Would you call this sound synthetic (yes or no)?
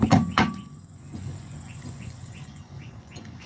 yes